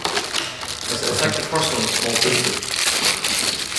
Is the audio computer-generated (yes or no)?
no